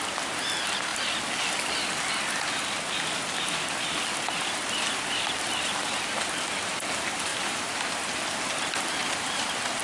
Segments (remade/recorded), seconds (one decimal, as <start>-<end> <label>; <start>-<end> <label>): 0.0-7.3 recorded; 7.3-7.9 remade; 7.9-9.0 recorded; 9.0-9.8 remade